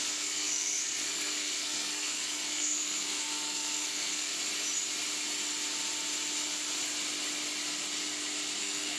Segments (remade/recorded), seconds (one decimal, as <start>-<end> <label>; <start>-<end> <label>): 0.0-4.3 remade; 4.3-8.6 recorded; 8.6-9.0 remade